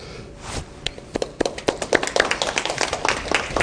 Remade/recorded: recorded